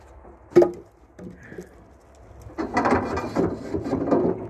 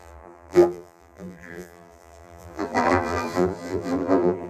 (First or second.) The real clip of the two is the first